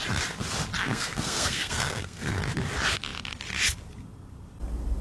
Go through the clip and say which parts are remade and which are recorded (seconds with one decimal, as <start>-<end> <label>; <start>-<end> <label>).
0.0-0.9 recorded; 0.9-2.4 remade; 2.4-5.0 recorded